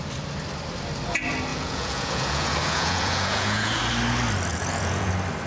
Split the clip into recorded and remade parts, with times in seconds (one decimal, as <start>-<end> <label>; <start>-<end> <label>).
0.0-1.5 recorded; 1.5-3.8 remade; 3.8-4.5 recorded; 4.5-5.1 remade; 5.1-5.5 recorded